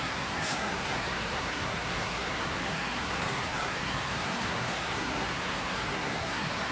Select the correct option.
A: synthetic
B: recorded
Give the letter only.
A